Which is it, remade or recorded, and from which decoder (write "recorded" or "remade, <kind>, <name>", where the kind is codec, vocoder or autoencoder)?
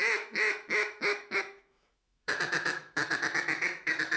remade, autoencoder, DAC-VAE